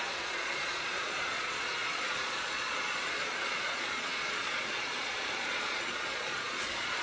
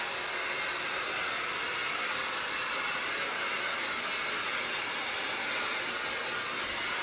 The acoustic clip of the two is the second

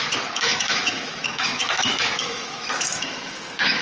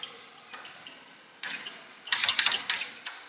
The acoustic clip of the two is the second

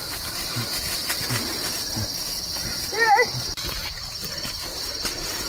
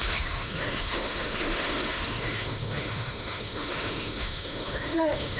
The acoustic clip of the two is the first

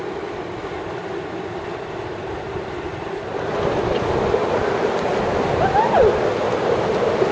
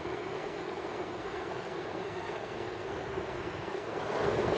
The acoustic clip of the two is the first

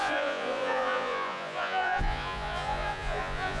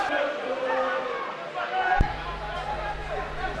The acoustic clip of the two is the second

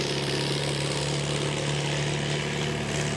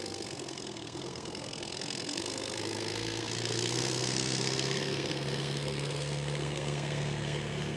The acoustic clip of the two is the first